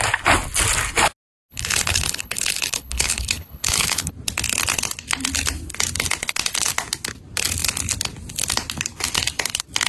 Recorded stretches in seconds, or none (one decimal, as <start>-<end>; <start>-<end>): 0.0-1.5; 4.1-9.9